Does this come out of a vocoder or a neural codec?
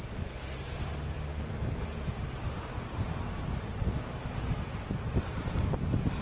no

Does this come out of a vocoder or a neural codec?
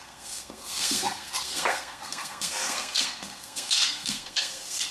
yes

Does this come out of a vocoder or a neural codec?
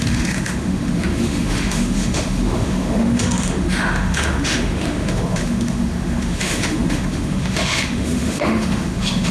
yes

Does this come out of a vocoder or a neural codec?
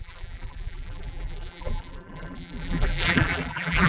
yes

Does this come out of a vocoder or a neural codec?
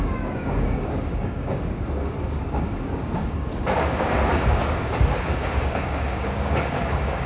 yes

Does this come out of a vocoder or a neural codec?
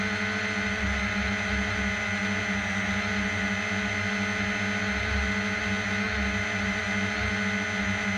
no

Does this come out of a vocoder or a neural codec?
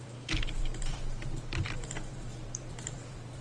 yes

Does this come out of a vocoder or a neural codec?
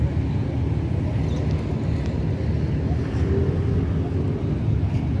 no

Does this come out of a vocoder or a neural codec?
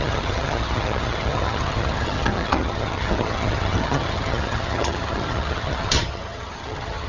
yes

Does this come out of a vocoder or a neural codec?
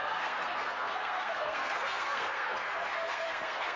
yes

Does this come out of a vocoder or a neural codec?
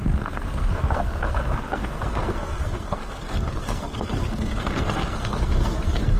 yes